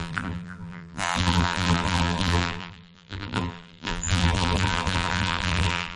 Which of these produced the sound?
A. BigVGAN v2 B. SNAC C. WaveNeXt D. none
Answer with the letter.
A